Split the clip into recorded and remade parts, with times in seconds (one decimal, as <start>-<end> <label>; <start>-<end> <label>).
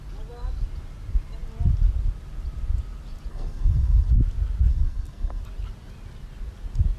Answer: 0.0-3.3 recorded; 3.3-4.1 remade; 4.1-4.7 recorded; 4.7-5.4 remade; 5.4-7.0 recorded